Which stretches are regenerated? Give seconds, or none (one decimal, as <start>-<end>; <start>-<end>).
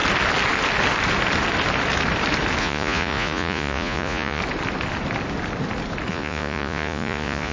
2.6-4.4; 6.1-7.5